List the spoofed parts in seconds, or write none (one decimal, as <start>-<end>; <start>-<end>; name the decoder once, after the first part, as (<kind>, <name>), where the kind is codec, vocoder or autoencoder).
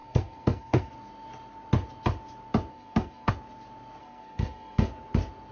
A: 0.0-0.9 (codec, SNAC); 2.7-3.3; 4.0-4.9